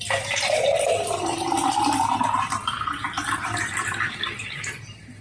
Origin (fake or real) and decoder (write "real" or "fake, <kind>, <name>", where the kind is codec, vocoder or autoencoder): real